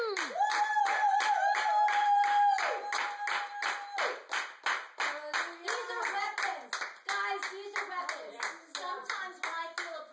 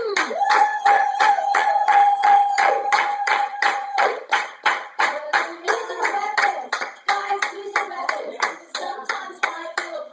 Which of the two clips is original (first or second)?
first